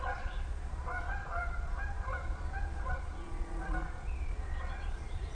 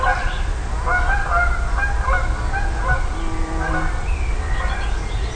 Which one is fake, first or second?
first